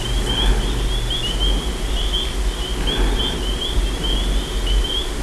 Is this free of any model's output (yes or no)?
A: yes